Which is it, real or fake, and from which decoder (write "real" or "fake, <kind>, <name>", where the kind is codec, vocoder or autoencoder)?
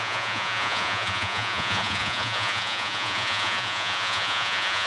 fake, vocoder, Vocos